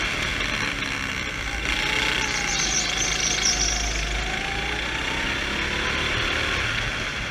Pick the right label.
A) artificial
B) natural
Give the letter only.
B